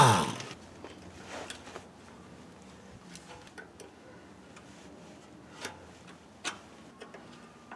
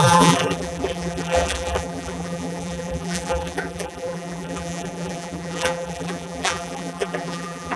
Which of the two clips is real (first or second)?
first